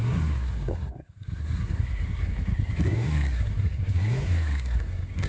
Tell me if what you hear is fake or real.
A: fake